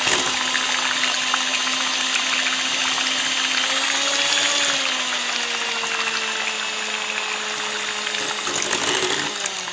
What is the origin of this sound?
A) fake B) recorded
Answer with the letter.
B